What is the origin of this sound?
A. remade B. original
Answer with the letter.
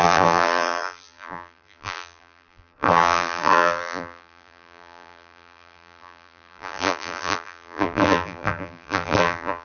A